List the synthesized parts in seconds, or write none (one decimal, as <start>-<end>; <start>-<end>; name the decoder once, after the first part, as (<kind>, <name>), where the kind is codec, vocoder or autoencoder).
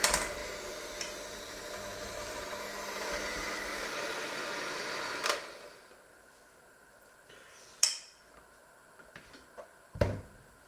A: none